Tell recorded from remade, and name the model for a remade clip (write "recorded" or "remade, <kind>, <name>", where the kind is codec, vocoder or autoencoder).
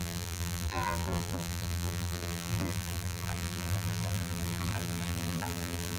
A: remade, vocoder, BigVGAN v2